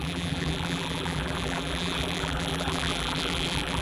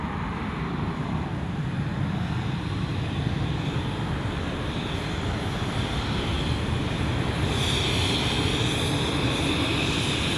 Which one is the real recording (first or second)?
second